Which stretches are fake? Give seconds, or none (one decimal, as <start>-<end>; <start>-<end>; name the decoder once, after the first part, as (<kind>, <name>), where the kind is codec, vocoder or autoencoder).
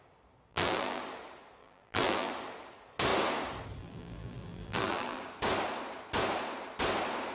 0.5-1.0 (vocoder, BigVGAN v2); 1.6-2.3; 3.8-5.2